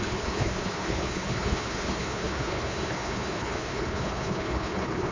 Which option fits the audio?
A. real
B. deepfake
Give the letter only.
B